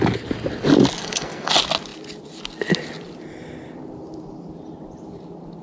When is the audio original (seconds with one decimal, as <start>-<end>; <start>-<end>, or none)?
0.0-1.0; 1.5-5.6

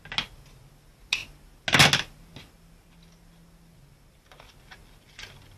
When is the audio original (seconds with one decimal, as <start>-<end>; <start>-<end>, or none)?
0.0-5.6

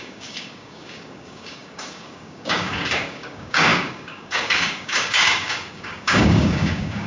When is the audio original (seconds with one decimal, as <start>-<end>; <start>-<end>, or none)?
none

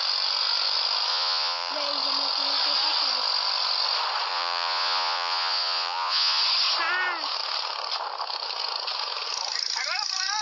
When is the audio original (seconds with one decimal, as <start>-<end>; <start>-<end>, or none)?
0.0-1.1; 1.7-4.3; 6.4-10.4

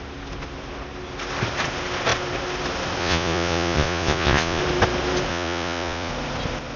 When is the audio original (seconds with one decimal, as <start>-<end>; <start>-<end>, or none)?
0.0-3.0; 4.6-5.3; 6.1-6.8

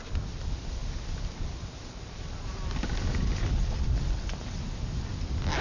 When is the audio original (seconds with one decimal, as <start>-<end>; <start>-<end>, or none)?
0.0-5.6

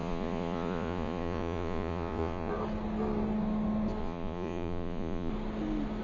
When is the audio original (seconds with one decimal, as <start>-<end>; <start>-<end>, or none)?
2.5-4.0; 5.3-6.0

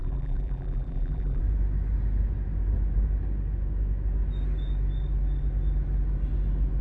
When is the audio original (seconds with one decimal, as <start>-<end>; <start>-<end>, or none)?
1.4-6.8